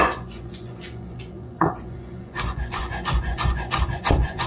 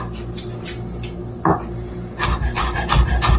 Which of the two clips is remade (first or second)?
first